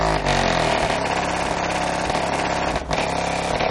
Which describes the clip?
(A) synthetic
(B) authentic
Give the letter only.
B